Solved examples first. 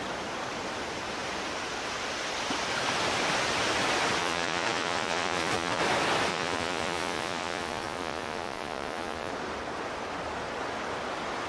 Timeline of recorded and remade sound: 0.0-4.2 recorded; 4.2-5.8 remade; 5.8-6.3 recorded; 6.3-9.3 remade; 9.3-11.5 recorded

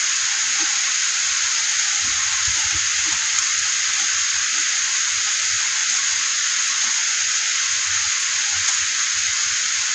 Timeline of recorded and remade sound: 0.0-5.8 recorded; 5.8-9.5 remade; 9.5-9.9 recorded

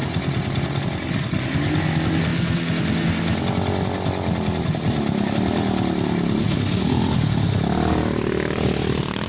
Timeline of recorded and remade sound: 0.0-9.3 recorded